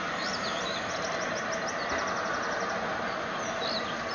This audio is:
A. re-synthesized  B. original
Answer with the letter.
B